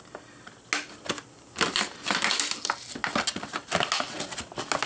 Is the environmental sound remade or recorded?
recorded